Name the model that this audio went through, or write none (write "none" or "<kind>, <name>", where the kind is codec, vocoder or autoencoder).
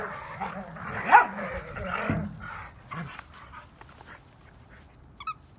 none